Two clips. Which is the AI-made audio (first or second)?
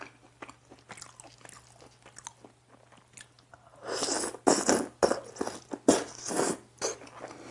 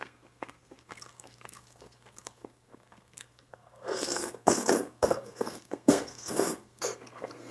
second